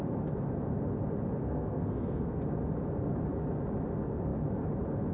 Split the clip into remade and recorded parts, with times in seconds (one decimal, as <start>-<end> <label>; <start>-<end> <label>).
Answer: 0.0-1.4 recorded; 1.4-2.4 remade; 2.4-5.1 recorded